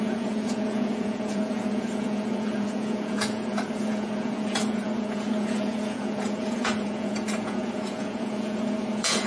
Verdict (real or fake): fake